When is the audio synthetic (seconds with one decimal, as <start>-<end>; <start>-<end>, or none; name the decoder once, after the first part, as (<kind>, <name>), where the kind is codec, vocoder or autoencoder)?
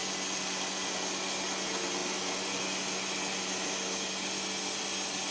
none